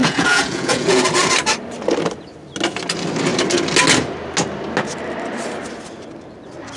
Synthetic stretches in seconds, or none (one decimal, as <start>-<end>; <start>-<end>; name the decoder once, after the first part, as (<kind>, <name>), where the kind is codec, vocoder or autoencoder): 0.0-1.0 (vocoder, Vocos)